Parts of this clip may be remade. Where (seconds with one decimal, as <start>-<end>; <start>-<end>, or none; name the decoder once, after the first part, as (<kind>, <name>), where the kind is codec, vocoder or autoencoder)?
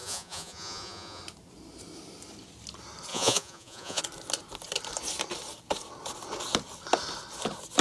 0.0-1.2 (vocoder, Vocos); 3.1-4.0